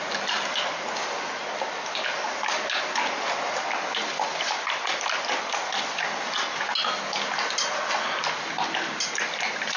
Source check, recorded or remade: recorded